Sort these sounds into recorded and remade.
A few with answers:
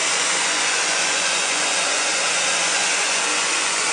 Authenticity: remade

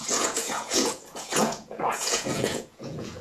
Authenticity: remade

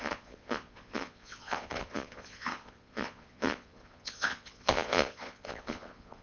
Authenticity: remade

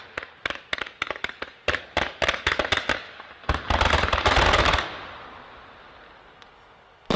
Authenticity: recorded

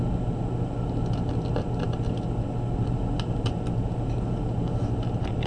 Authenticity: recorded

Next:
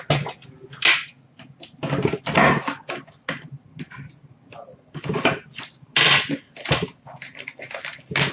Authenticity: recorded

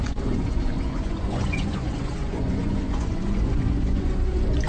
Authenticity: remade